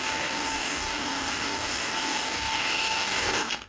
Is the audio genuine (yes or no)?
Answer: no